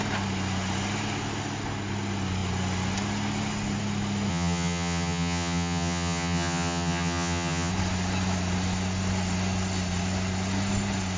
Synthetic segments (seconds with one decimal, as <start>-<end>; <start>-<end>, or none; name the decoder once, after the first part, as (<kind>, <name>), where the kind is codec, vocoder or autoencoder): 4.3-7.7 (vocoder, HiFi-GAN)